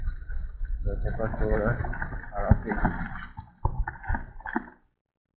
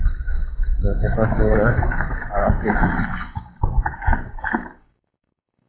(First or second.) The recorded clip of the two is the first